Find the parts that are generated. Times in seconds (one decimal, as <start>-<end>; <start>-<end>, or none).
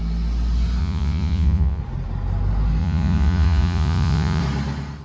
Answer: 0.8-1.8; 2.8-4.4